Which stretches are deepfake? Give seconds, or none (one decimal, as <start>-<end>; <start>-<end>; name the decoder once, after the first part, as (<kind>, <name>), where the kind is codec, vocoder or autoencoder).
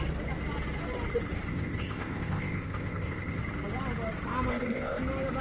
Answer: 1.5-3.4 (codec, ZipCodec); 4.5-5.0